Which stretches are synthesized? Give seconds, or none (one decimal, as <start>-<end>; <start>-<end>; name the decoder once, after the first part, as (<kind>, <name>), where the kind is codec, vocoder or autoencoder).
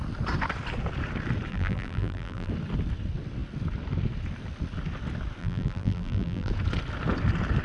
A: 1.5-2.5 (vocoder, BigVGAN v2); 5.4-6.5